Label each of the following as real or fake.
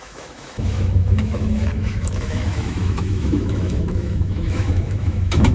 fake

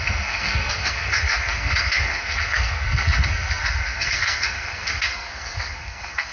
fake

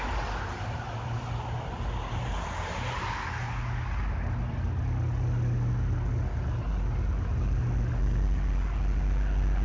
real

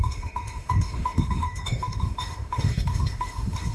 fake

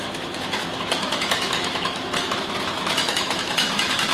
fake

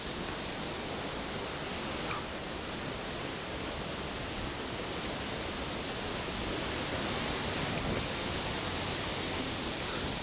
real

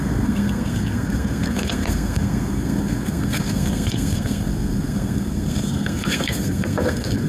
fake